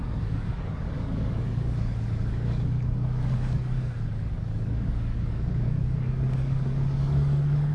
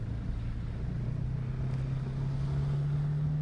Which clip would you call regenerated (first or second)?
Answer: first